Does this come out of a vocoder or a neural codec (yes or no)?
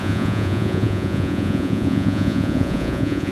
yes